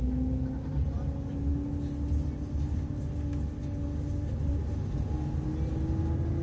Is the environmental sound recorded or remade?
recorded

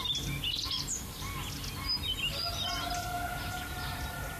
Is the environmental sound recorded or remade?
recorded